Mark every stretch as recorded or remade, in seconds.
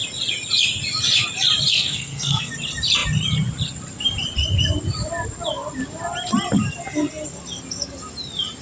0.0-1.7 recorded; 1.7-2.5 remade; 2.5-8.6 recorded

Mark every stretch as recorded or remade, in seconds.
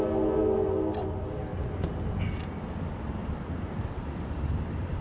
0.0-1.5 recorded; 1.5-2.2 remade; 2.2-3.2 recorded; 3.2-4.6 remade; 4.6-5.0 recorded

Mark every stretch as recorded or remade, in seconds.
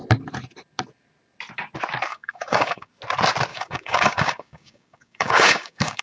0.0-2.1 recorded; 2.1-2.9 remade; 2.9-3.5 recorded; 3.5-6.0 remade